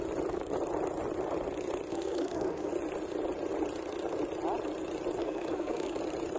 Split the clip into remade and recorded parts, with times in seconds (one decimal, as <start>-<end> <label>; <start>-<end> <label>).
0.0-1.9 recorded; 1.9-2.7 remade; 2.7-5.2 recorded; 5.2-6.0 remade; 6.0-6.4 recorded